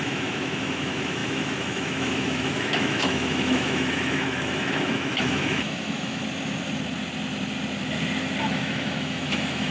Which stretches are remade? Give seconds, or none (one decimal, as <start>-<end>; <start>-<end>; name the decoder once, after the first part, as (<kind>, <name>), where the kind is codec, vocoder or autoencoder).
0.0-6.2 (autoencoder, DAC-VAE); 8.5-9.7